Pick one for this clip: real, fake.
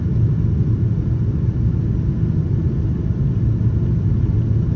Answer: real